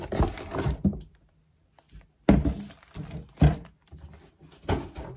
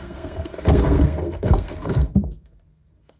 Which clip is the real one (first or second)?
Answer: first